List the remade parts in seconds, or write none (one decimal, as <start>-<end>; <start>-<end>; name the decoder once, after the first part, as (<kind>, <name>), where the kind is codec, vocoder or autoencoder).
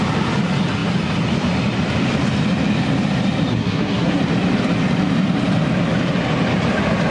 3.5-4.2 (codec, SNAC)